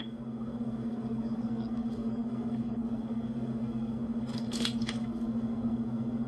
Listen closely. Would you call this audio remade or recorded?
remade